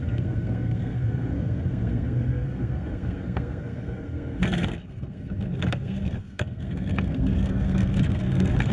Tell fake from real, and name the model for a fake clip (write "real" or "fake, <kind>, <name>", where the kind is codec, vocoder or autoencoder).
fake, codec, SNAC